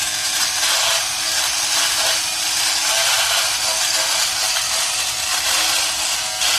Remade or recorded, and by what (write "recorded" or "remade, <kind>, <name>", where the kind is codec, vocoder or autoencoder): recorded